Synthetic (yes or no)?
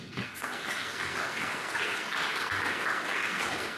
yes